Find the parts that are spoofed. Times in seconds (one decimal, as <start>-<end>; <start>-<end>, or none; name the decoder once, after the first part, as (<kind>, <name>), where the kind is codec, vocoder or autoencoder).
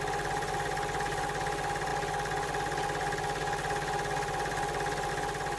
none